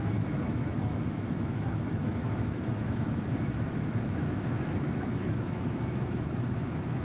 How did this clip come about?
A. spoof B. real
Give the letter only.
A